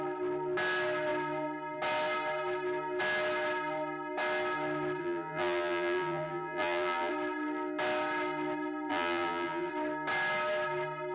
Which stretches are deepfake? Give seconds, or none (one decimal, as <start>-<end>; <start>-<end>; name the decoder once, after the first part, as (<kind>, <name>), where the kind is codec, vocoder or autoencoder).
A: 5.0-7.1 (vocoder, BigVGAN v2); 8.9-9.7